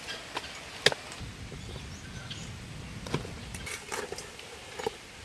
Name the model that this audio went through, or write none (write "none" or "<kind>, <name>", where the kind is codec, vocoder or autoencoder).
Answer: none